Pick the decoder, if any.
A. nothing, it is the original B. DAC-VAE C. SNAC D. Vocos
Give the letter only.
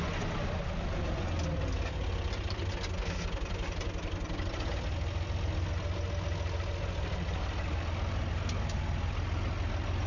A